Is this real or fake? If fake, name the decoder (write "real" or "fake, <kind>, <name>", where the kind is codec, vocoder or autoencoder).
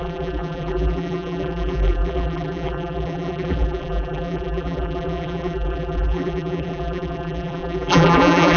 fake, vocoder, BigVGAN v2